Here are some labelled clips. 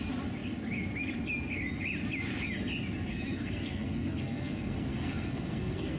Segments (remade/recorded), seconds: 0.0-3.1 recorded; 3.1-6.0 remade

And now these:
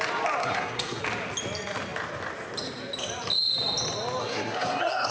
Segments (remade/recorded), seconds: 0.0-0.4 recorded; 0.4-1.0 remade; 1.0-4.2 recorded; 4.2-5.1 remade

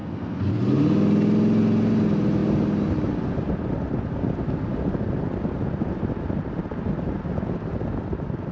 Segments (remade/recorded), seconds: 0.0-0.5 remade; 0.5-8.5 recorded

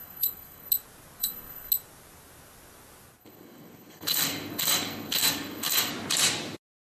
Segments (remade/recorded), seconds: 0.0-0.7 remade; 0.7-1.2 recorded; 1.2-1.7 remade; 1.7-3.2 recorded; 3.2-5.9 remade; 5.9-7.0 recorded

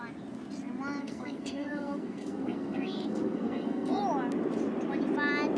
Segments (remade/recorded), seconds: 0.0-1.0 recorded; 1.0-4.0 remade; 4.0-5.6 recorded

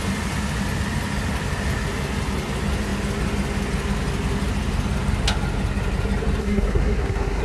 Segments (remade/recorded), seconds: 0.0-6.4 recorded; 6.4-7.4 remade